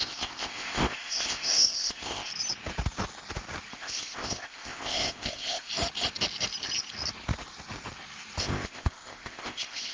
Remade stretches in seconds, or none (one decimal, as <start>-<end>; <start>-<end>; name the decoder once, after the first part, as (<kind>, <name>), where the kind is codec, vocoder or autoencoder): 0.0-2.3 (codec, ZipCodec); 3.7-5.7; 8.4-9.9